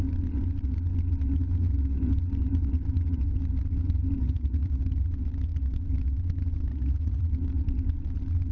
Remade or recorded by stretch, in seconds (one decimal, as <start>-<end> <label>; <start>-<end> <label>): 0.0-4.2 recorded; 4.2-4.8 remade; 4.8-6.7 recorded; 6.7-7.3 remade; 7.3-8.5 recorded